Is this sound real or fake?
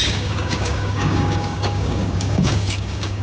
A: fake